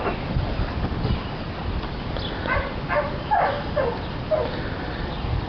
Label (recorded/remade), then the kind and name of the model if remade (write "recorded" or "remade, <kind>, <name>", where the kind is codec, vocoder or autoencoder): recorded